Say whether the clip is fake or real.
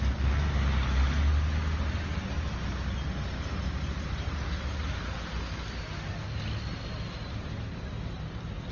real